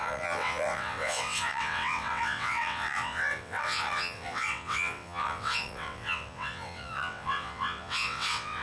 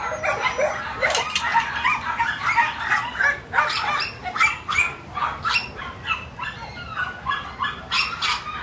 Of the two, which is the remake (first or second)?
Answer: first